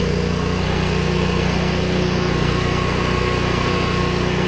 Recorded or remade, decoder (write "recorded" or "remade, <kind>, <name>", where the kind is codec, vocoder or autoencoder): remade, codec, SNAC